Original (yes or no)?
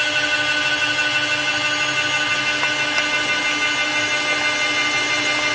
yes